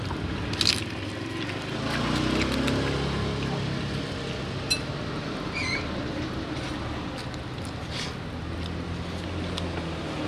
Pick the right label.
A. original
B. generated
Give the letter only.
A